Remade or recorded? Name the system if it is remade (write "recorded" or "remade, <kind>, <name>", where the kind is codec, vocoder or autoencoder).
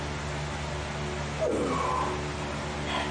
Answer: recorded